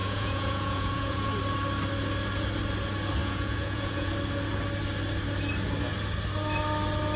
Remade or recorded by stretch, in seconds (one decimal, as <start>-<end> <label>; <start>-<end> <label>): 0.0-1.3 remade; 1.3-3.2 recorded; 3.2-4.1 remade; 4.1-7.2 recorded